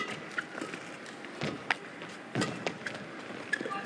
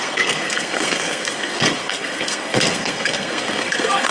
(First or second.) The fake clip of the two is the second